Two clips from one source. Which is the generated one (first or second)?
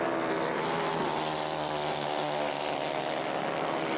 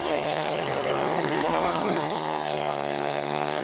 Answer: second